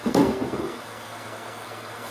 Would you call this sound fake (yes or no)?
yes